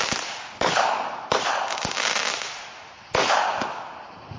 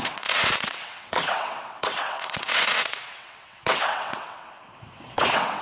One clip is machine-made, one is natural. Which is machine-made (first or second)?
second